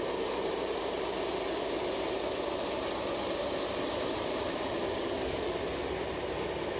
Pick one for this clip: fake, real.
real